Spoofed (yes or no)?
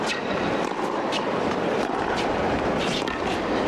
no